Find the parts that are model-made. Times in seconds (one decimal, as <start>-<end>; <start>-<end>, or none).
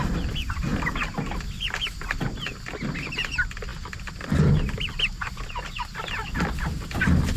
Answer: none